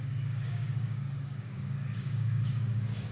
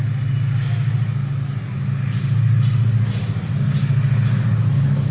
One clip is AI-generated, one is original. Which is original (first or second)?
second